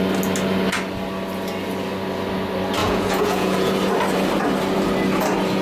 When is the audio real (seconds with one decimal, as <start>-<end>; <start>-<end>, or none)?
0.0-2.8; 3.7-5.6